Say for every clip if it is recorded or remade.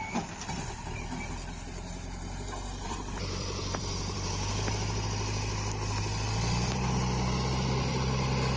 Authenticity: remade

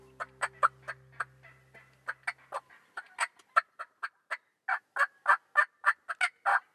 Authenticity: recorded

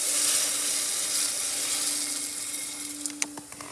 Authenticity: recorded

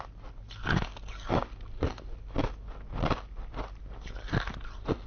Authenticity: recorded